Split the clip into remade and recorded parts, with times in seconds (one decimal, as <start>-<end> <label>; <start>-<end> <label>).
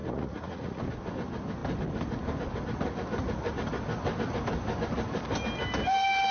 0.0-0.8 remade; 0.8-6.3 recorded